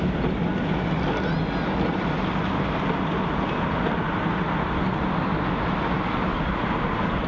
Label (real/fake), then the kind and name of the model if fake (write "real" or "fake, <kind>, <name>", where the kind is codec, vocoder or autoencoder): real